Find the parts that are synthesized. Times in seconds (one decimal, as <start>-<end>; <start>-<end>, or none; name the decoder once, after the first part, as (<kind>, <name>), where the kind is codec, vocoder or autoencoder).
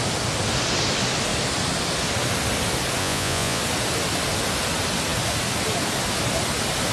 3.0-3.6 (vocoder, Vocos)